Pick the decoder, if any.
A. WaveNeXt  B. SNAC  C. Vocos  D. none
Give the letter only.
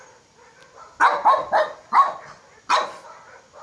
D